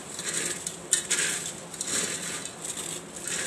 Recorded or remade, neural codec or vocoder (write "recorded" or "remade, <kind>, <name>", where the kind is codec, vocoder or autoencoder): recorded